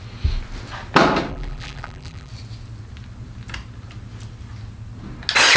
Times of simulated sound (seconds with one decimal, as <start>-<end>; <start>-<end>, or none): 1.3-2.3

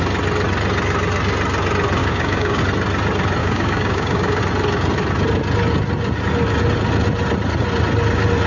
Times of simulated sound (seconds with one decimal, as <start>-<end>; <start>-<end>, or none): 2.0-2.6; 3.4-4.4

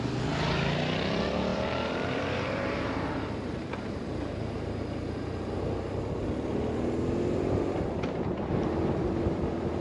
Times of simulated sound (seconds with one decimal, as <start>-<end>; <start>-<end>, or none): 1.5-5.2

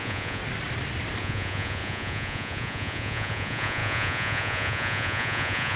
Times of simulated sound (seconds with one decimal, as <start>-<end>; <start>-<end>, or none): 0.0-0.4; 1.2-5.8

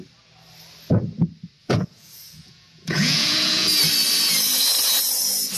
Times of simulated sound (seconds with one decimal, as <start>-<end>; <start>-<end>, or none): 1.6-3.8

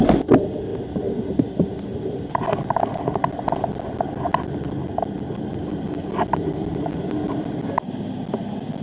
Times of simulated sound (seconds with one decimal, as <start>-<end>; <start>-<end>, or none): none

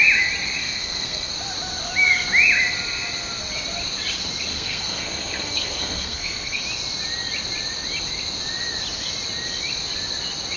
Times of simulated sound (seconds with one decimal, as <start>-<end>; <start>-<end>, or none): 0.6-1.3; 4.5-6.6

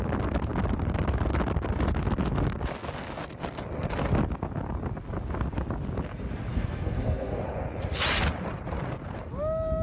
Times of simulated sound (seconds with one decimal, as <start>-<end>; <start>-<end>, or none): 6.5-7.4